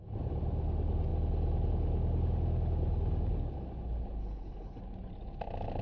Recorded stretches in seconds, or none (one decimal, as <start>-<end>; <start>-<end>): 0.0-4.2; 4.8-5.8

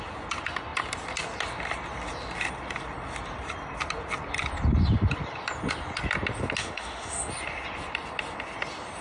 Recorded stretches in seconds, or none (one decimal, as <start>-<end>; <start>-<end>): 0.0-6.6; 7.3-9.0

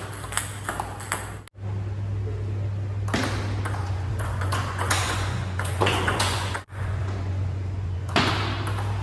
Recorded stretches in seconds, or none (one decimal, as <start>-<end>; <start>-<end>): 0.0-3.8; 8.3-9.0

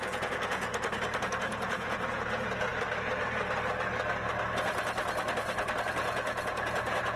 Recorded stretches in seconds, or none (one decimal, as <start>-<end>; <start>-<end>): 0.7-1.2; 2.7-5.9

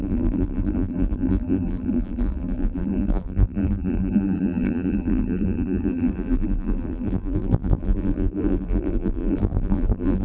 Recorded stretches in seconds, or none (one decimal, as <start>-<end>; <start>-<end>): none

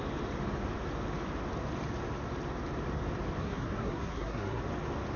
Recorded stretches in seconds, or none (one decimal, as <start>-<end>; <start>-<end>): 0.0-3.4; 4.6-5.2

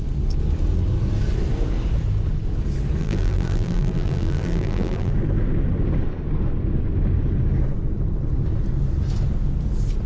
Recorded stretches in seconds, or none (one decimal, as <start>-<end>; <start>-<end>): 0.0-3.0; 5.1-10.1